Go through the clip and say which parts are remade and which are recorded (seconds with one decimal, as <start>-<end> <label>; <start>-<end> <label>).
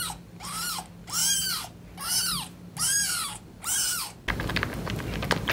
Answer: 0.0-5.5 recorded